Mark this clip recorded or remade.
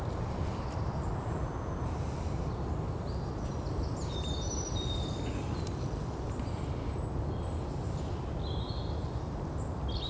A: recorded